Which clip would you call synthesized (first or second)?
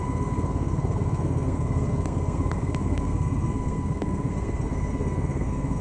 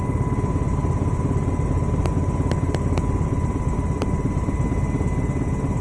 first